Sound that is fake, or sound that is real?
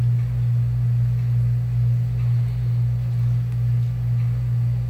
real